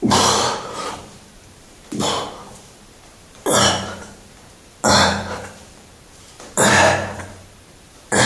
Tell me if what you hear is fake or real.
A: fake